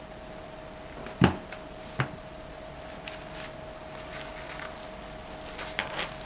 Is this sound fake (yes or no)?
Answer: no